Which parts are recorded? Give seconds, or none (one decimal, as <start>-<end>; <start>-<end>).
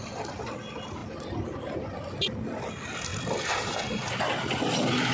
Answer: 0.0-5.1